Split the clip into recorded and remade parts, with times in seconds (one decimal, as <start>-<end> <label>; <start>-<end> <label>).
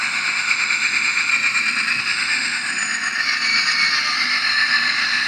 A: 0.0-1.3 remade; 1.3-2.0 recorded; 2.0-2.7 remade; 2.7-4.1 recorded; 4.1-5.3 remade